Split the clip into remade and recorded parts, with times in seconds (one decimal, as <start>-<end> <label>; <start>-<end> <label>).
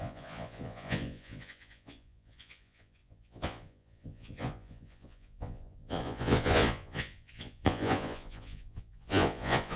0.0-9.8 remade